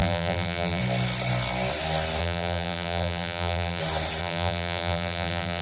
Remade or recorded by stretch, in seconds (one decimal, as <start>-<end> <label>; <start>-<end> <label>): 0.0-0.8 remade; 0.8-2.2 recorded; 2.2-3.8 remade; 3.8-4.2 recorded; 4.2-5.6 remade